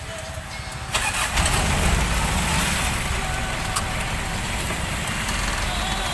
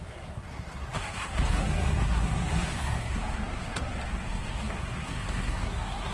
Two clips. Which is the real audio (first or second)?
first